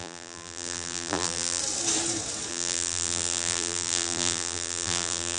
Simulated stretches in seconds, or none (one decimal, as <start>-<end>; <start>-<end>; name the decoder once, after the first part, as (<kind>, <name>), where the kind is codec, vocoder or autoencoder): 0.0-1.6 (vocoder, BigVGAN v2); 2.5-5.4